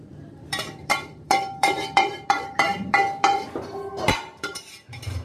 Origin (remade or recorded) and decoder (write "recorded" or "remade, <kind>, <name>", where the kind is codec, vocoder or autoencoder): remade, vocoder, BigVGAN v2